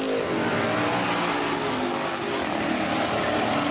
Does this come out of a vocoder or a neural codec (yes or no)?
no